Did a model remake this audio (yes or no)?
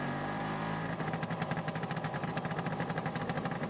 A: yes